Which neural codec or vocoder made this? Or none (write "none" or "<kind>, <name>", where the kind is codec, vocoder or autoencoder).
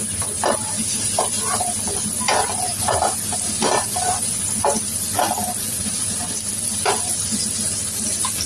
none